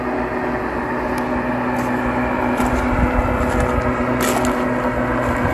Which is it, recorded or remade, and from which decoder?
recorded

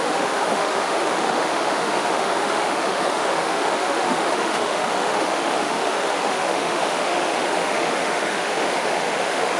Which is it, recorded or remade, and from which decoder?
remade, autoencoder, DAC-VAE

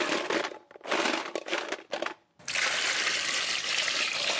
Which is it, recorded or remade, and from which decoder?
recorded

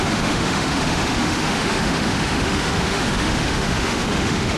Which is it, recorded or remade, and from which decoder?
remade, autoencoder, DAC-VAE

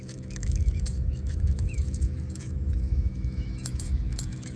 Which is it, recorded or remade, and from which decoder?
remade, autoencoder, DAC-VAE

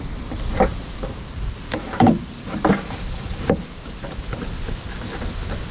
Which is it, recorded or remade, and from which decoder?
recorded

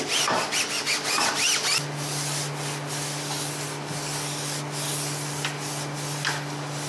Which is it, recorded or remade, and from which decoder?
recorded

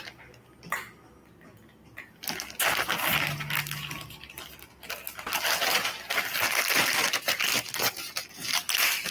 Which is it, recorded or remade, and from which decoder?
recorded